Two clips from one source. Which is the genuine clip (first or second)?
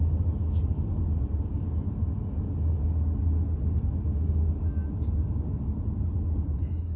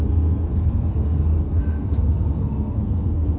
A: first